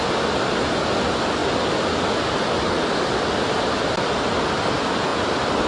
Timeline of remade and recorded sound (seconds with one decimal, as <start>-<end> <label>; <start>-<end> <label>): 0.0-5.1 recorded; 5.1-5.7 remade